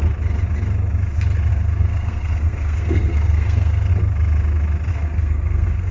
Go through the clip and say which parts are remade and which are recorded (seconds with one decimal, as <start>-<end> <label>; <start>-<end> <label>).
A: 0.0-1.5 recorded; 1.5-3.9 remade; 3.9-4.9 recorded; 4.9-5.9 remade

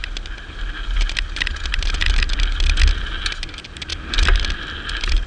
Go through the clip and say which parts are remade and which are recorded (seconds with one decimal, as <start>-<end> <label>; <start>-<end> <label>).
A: 0.0-5.3 recorded

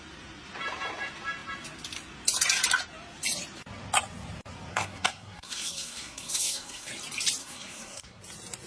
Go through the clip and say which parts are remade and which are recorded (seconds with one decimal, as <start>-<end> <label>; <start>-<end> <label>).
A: 0.0-4.7 recorded; 4.7-6.9 remade; 6.9-7.4 recorded; 7.4-8.2 remade; 8.2-8.7 recorded

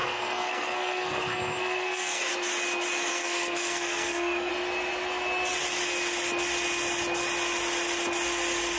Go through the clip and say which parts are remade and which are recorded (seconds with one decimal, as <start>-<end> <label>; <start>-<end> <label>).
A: 0.0-2.3 remade; 2.3-3.1 recorded; 3.1-4.5 remade; 4.5-8.8 recorded